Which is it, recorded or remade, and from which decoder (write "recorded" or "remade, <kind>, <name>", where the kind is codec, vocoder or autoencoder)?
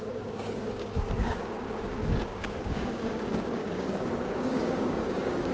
remade, codec, DAC